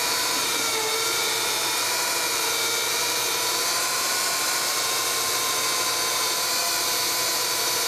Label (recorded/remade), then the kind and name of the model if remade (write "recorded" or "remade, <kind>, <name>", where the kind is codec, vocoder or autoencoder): remade, vocoder, BigVGAN v2